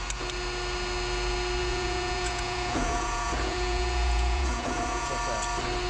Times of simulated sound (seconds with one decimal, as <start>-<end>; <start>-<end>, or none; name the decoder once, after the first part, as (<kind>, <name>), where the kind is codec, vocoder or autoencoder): 1.6-5.1 (vocoder, Vocos)